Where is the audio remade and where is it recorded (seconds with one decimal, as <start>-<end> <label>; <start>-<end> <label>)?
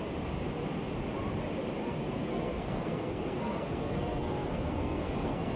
0.0-1.8 recorded; 1.8-5.6 remade